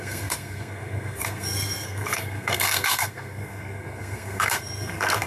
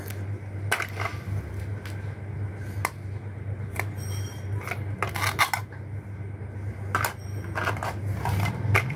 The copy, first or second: first